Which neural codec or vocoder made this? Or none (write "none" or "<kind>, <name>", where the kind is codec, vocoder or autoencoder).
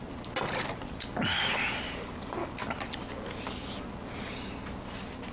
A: none